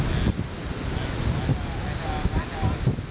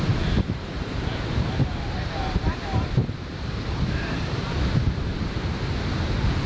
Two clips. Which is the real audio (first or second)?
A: first